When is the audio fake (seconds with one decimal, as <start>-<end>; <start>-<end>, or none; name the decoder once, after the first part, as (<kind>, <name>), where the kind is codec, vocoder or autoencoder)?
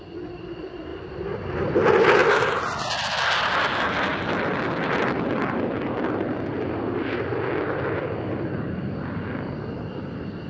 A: 4.1-6.3 (vocoder, BigVGAN v2)